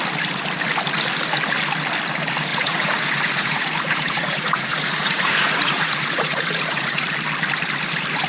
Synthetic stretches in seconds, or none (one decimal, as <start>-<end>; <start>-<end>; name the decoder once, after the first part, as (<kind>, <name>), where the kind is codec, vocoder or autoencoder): 2.5-7.0 (vocoder, Vocos)

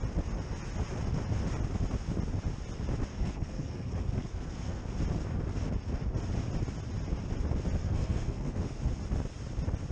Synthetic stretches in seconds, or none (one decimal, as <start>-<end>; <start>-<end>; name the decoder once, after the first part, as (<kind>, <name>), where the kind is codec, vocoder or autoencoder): 3.1-4.8 (codec, SNAC); 7.8-8.8

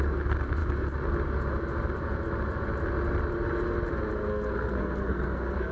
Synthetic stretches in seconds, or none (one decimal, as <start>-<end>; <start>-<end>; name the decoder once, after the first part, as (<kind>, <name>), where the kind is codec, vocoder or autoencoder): 4.3-5.7 (codec, SNAC)

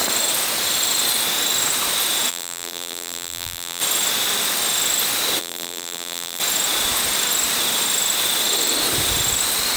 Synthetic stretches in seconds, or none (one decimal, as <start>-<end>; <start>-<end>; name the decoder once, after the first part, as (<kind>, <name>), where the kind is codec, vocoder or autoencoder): 2.3-3.8 (vocoder, BigVGAN v2); 5.4-6.4

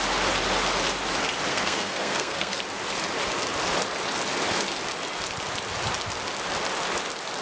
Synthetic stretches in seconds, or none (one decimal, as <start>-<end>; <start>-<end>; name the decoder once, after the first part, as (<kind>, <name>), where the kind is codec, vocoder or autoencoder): 1.5-2.6 (codec, SNAC)